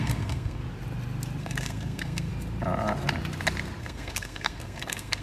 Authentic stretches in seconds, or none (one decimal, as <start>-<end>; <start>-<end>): 0.6-1.4; 2.3-3.8

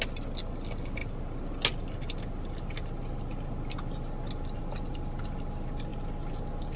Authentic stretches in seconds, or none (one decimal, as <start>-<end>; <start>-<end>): 0.0-6.8

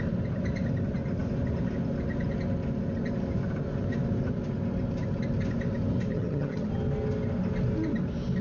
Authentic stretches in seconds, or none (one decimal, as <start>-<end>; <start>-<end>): 0.0-6.1; 6.7-8.4

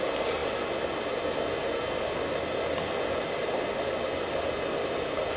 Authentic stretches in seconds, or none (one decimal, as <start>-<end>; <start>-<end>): 0.0-5.4

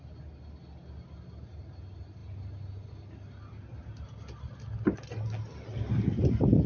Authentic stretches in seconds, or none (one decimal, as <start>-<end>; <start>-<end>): 0.0-6.7

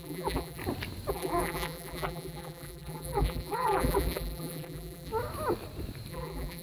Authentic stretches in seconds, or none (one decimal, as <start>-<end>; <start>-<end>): 0.6-1.1; 5.1-6.1